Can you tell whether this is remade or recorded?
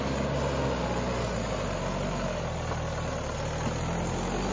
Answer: recorded